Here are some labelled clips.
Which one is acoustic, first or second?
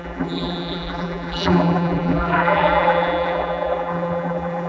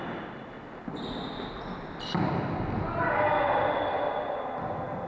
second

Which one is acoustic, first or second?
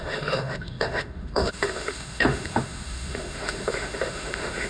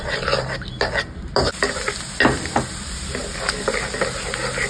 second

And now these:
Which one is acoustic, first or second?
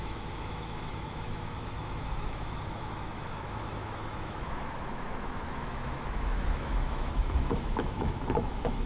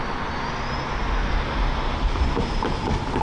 second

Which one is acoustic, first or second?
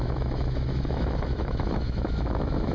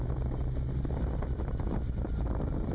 second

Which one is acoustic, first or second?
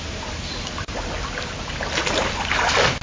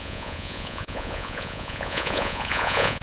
first